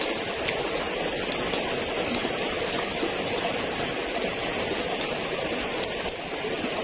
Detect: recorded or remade recorded